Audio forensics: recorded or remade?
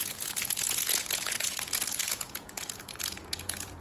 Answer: remade